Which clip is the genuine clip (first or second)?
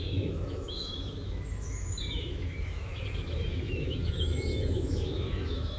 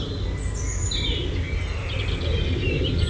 second